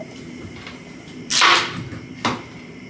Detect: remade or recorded recorded